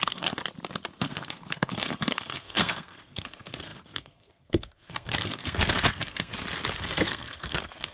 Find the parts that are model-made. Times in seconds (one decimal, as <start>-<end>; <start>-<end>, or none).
0.0-0.4; 1.0-6.3; 6.8-7.9